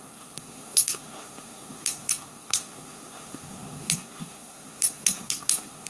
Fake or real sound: fake